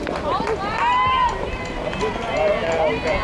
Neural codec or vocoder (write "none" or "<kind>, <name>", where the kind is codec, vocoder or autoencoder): none